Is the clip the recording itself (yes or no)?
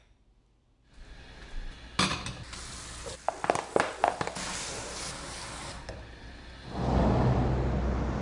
yes